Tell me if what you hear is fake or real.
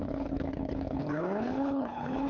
fake